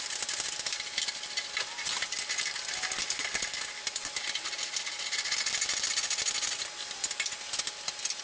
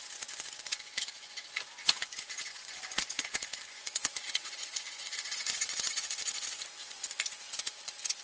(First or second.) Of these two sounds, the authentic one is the first